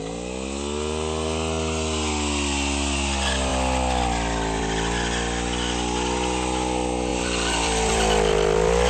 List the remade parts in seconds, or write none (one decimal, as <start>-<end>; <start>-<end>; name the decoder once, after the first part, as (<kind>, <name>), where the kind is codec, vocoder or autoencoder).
7.1-8.9 (vocoder, BigVGAN v2)

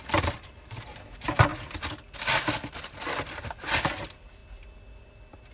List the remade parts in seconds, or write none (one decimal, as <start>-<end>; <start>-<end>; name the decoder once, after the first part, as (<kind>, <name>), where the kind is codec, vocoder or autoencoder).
0.0-1.5 (vocoder, BigVGAN v2); 3.8-4.4